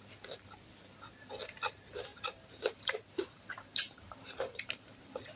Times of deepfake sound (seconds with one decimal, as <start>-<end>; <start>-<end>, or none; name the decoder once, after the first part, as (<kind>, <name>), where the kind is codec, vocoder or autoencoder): 2.1-5.4 (vocoder, BigVGAN v2)